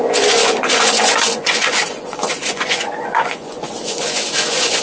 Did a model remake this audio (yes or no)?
yes